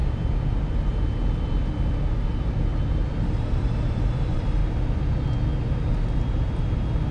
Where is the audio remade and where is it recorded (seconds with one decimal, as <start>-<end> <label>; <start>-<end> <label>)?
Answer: 0.0-3.2 recorded; 3.2-4.6 remade; 4.6-7.1 recorded